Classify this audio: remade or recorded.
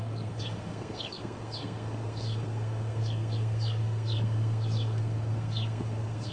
remade